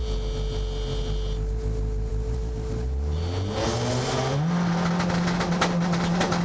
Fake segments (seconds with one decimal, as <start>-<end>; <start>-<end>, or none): none